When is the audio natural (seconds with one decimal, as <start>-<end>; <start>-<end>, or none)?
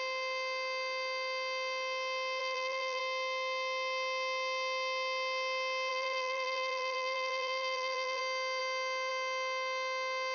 0.0-2.4; 3.0-5.9; 8.2-10.3